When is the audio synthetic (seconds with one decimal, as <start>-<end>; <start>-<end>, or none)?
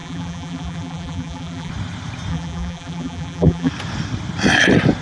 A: 0.0-1.7; 2.3-3.7